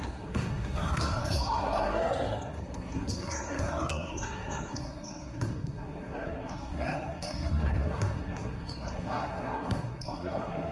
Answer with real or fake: fake